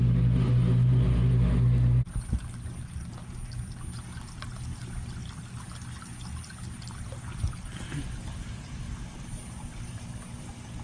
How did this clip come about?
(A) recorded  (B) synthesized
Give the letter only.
A